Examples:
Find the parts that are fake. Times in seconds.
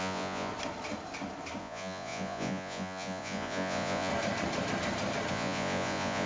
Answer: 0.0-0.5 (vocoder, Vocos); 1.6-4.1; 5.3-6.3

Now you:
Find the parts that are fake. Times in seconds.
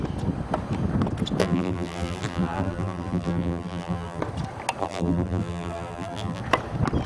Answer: 1.4-4.2 (vocoder, BigVGAN v2); 4.8-6.4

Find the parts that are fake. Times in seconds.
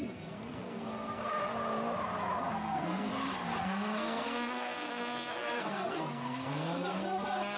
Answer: 0.0-1.4 (codec, SNAC); 2.4-3.1; 3.6-7.6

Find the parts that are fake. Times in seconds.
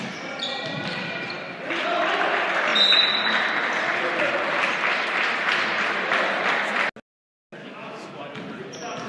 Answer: 7.6-8.2 (autoencoder, DAC-VAE)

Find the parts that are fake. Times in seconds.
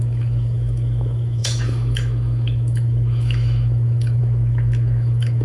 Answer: 0.0-5.4 (autoencoder, DAC-VAE)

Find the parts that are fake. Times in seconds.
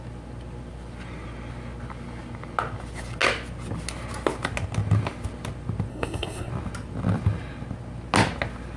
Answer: 5.9-6.5 (codec, SNAC)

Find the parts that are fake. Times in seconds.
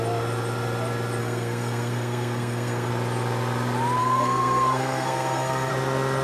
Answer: 1.2-2.9 (codec, SNAC); 4.0-5.7